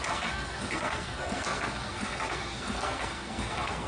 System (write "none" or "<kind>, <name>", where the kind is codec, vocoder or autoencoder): codec, SNAC